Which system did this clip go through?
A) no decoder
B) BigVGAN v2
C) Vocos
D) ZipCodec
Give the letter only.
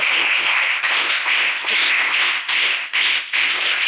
D